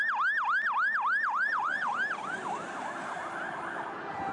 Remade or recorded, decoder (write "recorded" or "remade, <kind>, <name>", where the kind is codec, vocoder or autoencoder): recorded